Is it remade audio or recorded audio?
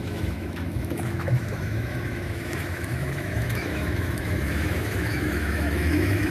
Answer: remade